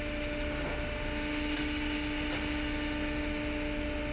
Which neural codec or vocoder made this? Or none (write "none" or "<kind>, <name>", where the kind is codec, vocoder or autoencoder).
none